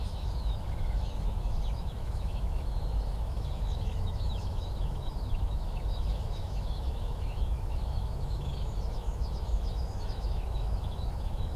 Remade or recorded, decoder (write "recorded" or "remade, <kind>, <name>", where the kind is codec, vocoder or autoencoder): remade, autoencoder, DAC-VAE